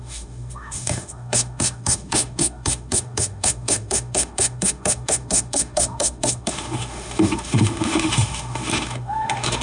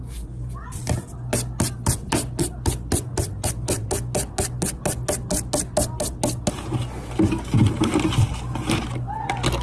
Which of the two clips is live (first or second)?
second